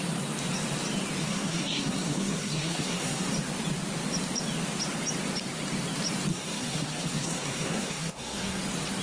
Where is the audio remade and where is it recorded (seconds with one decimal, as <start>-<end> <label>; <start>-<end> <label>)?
0.0-1.2 recorded; 1.2-3.3 remade; 3.3-6.3 recorded; 6.3-8.6 remade; 8.6-9.0 recorded

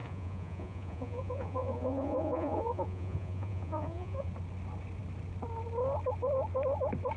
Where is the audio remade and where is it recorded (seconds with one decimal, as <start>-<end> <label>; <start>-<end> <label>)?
0.0-4.3 remade; 4.3-7.2 recorded

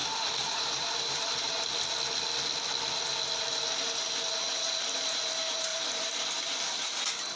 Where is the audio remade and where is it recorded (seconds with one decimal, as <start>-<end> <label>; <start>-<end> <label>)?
0.0-1.5 remade; 1.5-5.7 recorded; 5.7-7.0 remade; 7.0-7.4 recorded